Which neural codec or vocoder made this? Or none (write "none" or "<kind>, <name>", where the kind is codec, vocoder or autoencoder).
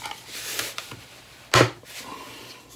none